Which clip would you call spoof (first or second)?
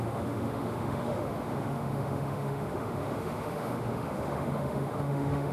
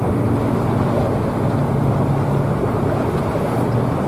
first